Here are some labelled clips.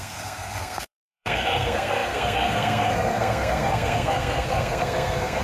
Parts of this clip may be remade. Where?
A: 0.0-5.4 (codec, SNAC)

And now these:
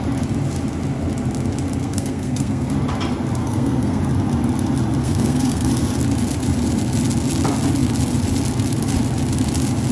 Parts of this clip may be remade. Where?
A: 1.8-2.7 (codec, SNAC); 3.4-4.0; 5.0-5.7

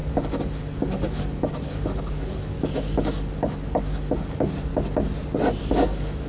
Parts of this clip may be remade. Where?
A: 0.0-4.7 (codec, DAC); 5.6-6.3

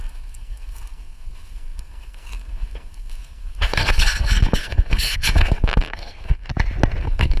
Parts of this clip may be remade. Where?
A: 0.0-6.5 (codec, SNAC); 7.0-7.4

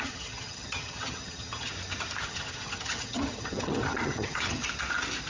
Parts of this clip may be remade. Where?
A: 0.0-1.7 (vocoder, HiFi-GAN); 2.2-4.6

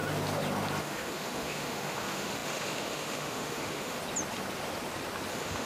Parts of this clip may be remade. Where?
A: 0.8-4.0 (autoencoder, DAC-VAE); 5.3-5.7

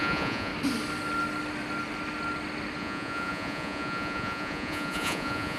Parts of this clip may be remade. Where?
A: 0.0-0.5 (vocoder, Vocos); 2.8-5.6